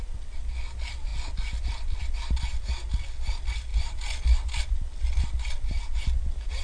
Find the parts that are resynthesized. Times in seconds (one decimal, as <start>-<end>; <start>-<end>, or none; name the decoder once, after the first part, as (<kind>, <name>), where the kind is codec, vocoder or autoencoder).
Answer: none